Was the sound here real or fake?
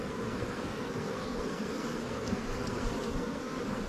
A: fake